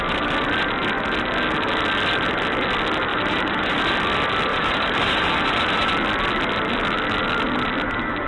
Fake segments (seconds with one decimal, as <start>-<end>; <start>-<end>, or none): 3.1-3.8; 4.5-5.9